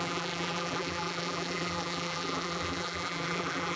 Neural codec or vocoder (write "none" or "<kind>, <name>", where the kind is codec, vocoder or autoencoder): vocoder, BigVGAN v2